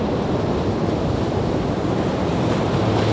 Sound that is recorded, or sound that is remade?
remade